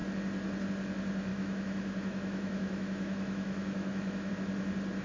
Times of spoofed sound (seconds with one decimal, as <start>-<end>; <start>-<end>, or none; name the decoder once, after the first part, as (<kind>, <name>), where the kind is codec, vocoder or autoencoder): 1.3-4.3 (autoencoder, DAC-VAE)